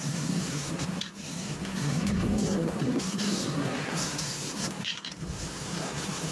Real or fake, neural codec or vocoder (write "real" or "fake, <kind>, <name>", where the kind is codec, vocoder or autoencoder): fake, codec, SNAC